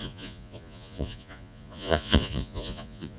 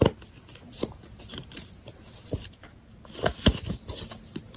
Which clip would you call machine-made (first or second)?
first